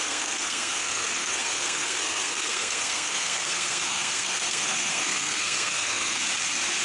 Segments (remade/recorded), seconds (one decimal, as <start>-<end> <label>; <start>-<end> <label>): 0.0-6.2 remade; 6.2-6.8 recorded